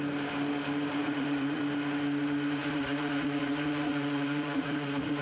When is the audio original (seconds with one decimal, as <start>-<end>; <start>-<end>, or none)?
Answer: 0.0-1.0; 1.6-2.6